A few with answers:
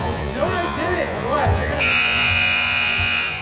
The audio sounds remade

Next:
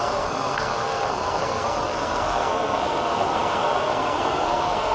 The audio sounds remade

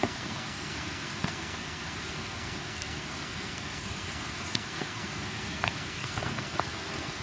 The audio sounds remade